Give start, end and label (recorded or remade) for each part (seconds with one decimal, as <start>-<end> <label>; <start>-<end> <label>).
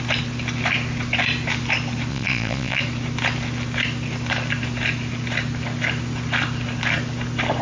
0.0-2.1 recorded; 2.1-2.8 remade; 2.8-7.6 recorded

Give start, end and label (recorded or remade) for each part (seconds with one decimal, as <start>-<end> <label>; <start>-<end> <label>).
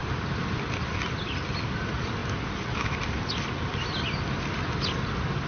0.0-5.5 recorded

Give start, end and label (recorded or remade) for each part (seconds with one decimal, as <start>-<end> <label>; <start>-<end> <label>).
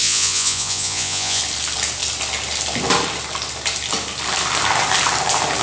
0.0-1.4 remade; 1.4-5.6 recorded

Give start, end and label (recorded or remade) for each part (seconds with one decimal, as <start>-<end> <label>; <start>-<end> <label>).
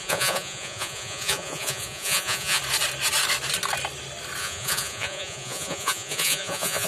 0.0-2.6 remade; 2.6-4.4 recorded; 4.4-6.9 remade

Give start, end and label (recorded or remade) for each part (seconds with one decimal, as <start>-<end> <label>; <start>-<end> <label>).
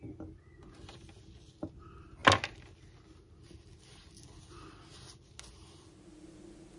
0.0-6.8 recorded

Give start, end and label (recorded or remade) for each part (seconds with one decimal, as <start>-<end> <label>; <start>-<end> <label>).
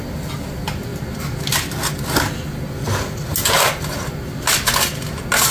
0.0-5.5 recorded